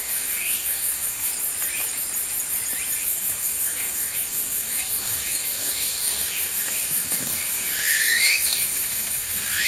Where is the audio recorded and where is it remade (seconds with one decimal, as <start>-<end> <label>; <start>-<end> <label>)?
0.0-1.3 remade; 1.3-3.0 recorded; 3.0-9.7 remade